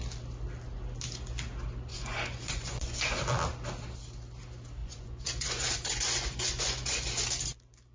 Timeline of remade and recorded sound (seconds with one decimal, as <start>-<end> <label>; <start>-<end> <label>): 0.0-1.9 recorded; 1.9-3.2 remade; 3.2-4.8 recorded; 4.8-7.1 remade; 7.1-7.9 recorded